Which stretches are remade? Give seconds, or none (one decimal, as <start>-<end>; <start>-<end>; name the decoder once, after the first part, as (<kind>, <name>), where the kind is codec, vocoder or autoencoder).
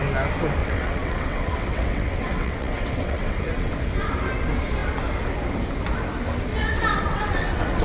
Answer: 0.6-3.7 (vocoder, WaveNeXt); 6.5-7.8